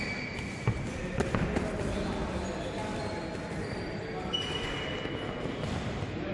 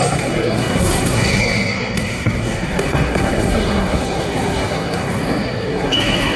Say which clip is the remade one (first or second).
second